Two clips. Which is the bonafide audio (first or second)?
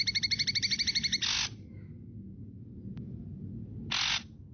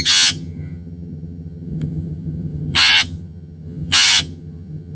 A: first